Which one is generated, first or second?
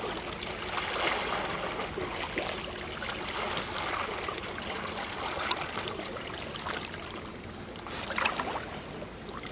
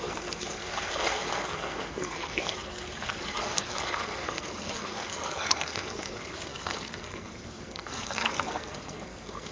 second